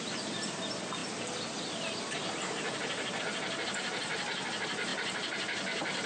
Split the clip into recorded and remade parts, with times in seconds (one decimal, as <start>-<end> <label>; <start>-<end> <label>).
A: 0.0-6.1 recorded